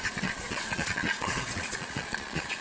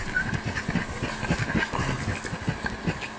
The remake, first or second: first